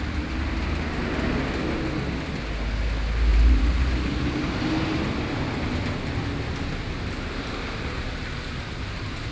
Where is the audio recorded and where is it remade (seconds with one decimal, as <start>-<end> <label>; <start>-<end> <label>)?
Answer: 0.0-3.3 recorded; 3.3-5.1 remade; 5.1-9.3 recorded